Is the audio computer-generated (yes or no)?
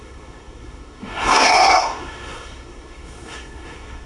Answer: yes